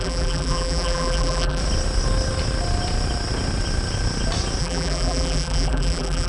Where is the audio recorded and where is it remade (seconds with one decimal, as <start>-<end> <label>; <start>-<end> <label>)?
0.0-1.6 remade; 1.6-4.6 recorded; 4.6-6.3 remade